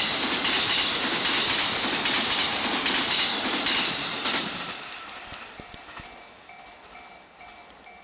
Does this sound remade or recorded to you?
recorded